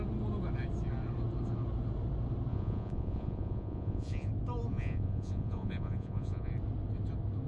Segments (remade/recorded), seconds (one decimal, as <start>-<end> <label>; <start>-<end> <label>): 0.0-2.5 recorded; 2.5-4.3 remade; 4.3-4.7 recorded; 4.7-6.5 remade; 6.5-7.5 recorded

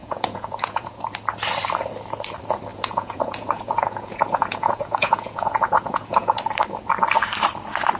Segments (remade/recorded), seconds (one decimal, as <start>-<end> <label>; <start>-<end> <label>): 0.0-1.0 remade; 1.0-2.7 recorded; 2.7-6.4 remade; 6.4-8.0 recorded

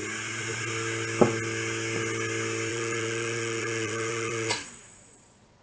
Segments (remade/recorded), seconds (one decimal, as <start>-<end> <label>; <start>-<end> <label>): 0.0-2.7 recorded; 2.7-5.6 remade

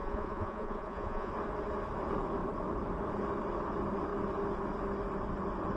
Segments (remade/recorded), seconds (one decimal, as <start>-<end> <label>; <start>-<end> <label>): 0.0-1.3 remade; 1.3-5.8 recorded

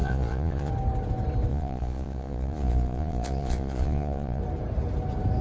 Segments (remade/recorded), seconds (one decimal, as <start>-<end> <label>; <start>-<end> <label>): 0.0-0.7 remade; 0.7-1.5 recorded; 1.5-4.4 remade; 4.4-5.4 recorded